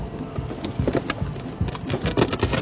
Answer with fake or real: real